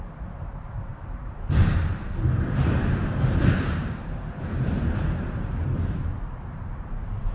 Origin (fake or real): fake